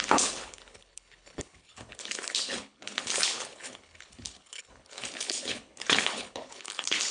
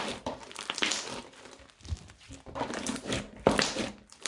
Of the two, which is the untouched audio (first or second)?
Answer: second